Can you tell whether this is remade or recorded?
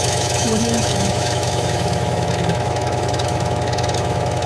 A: remade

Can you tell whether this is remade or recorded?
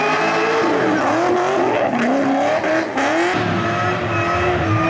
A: recorded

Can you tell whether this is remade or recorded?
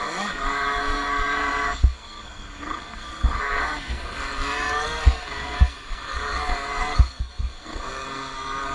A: remade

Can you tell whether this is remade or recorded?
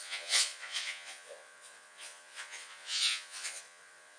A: remade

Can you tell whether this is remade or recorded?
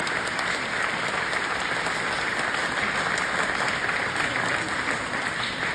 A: recorded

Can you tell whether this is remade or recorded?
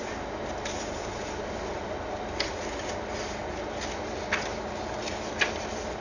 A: recorded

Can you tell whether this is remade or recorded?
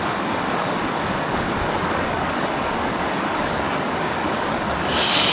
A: remade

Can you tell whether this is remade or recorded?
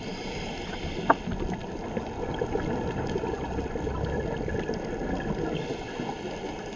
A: recorded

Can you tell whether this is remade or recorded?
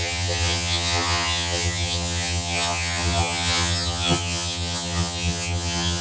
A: remade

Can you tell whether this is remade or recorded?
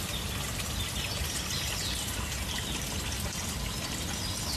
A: recorded